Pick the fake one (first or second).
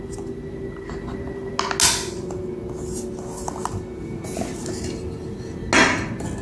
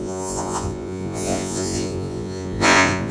second